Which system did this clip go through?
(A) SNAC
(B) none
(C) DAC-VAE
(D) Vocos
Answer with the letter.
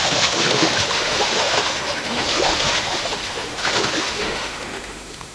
C